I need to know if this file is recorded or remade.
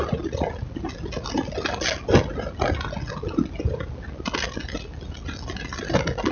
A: recorded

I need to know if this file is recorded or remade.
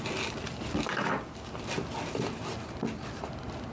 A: recorded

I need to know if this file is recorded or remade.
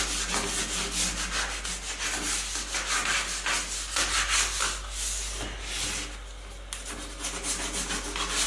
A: recorded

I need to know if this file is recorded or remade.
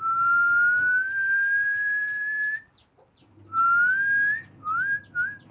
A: recorded